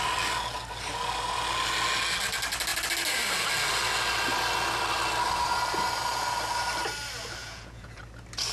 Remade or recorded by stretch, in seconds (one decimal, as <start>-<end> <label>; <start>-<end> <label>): 0.0-7.4 recorded; 7.4-8.0 remade; 8.0-8.5 recorded